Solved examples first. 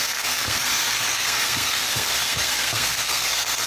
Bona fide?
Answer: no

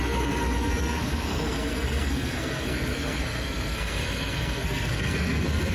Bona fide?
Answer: no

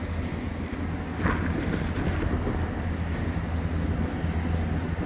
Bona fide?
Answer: yes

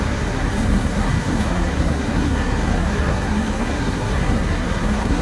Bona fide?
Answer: no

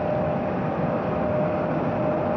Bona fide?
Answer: yes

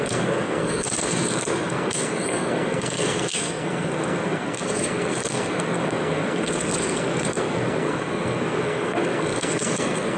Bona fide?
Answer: no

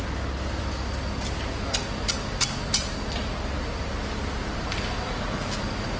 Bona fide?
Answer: yes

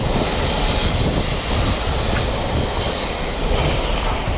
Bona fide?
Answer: yes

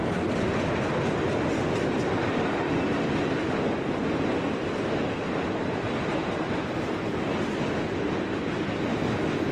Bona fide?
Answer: yes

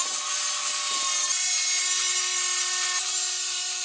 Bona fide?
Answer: yes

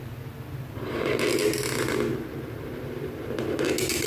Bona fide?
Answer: yes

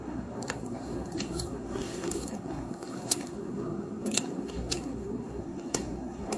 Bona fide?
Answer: no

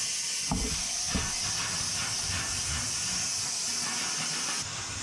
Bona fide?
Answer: yes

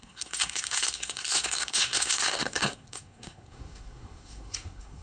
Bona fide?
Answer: no